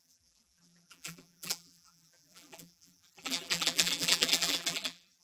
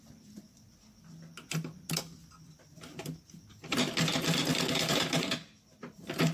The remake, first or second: first